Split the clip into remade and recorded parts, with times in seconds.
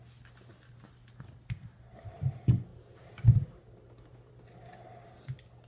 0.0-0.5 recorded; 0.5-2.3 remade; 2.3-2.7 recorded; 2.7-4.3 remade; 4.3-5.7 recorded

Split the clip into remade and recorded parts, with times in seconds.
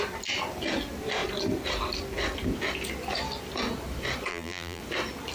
0.0-4.3 recorded; 4.3-4.8 remade; 4.8-5.3 recorded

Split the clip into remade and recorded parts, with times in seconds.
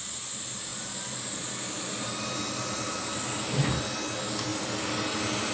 0.0-5.5 recorded